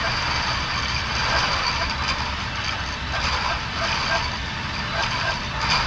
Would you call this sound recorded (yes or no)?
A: yes